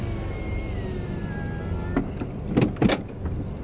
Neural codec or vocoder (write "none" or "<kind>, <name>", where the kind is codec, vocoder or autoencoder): none